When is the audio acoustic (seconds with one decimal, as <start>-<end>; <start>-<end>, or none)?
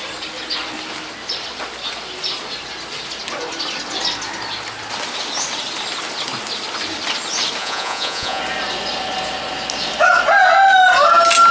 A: 0.0-7.6; 8.4-11.5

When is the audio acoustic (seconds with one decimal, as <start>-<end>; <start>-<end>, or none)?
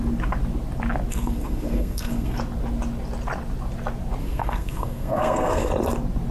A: 0.0-1.1; 2.4-4.2; 5.7-6.3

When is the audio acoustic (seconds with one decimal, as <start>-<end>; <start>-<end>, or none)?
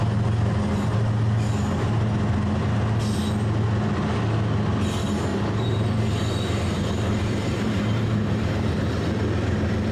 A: 0.0-5.3; 8.9-9.9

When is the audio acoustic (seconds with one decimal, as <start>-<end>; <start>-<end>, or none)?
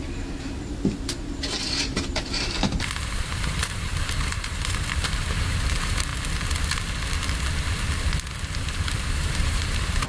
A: 6.1-8.5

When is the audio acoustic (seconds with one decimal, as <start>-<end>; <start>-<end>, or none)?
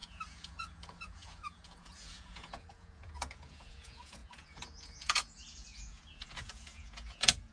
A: none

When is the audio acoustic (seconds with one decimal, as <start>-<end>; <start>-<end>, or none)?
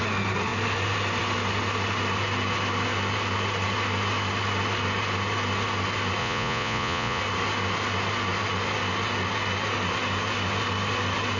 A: 0.0-6.2; 7.2-11.4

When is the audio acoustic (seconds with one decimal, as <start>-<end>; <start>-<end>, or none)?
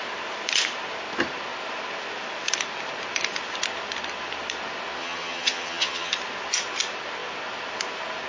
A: 0.0-5.0; 6.1-8.3